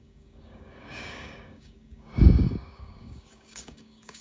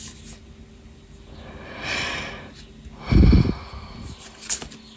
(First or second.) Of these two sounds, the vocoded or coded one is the first